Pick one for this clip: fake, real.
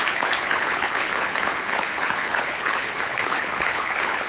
fake